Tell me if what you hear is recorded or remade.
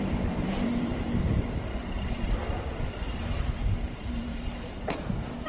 remade